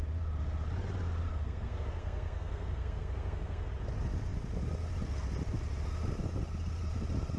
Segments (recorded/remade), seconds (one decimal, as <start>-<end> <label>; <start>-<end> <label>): 0.0-1.3 recorded; 1.3-3.7 remade; 3.7-7.4 recorded